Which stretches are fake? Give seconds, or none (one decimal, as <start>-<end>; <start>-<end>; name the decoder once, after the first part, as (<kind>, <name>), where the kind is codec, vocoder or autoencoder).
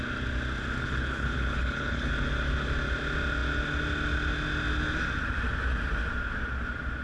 0.8-2.1 (codec, HILCodec)